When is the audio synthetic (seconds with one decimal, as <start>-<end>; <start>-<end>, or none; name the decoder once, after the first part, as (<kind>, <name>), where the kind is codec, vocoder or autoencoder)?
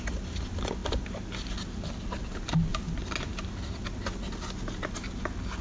none